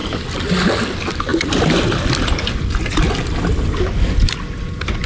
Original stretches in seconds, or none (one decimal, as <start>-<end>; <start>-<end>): 0.0-5.1